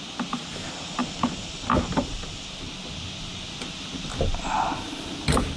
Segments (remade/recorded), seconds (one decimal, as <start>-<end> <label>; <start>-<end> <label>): 0.0-5.6 recorded